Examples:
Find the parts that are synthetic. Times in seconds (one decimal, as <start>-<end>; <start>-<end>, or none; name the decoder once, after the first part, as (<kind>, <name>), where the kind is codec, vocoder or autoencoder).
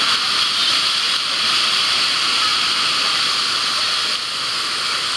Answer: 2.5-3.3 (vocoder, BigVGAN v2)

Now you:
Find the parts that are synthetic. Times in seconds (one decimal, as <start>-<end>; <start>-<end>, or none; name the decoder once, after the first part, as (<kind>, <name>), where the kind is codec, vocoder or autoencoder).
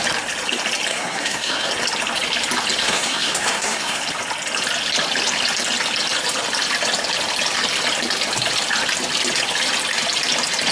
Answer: 0.9-1.7 (codec, SNAC); 2.8-4.0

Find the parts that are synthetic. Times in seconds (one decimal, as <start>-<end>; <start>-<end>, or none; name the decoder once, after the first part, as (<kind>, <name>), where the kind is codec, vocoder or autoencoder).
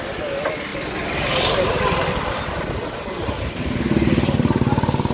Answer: none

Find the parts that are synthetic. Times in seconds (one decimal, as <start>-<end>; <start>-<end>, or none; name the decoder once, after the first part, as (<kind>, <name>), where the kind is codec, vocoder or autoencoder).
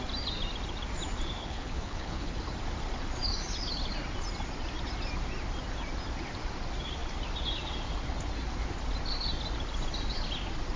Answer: 1.4-2.4 (codec, HILCodec)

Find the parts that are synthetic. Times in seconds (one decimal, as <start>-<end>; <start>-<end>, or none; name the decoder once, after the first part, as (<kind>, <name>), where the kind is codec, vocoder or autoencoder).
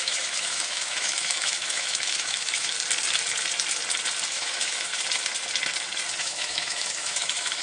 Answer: 0.0-2.7 (autoencoder, DAC-VAE); 4.3-4.9; 6.2-7.6